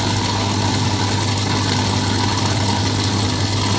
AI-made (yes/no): no